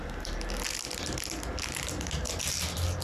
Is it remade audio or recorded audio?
recorded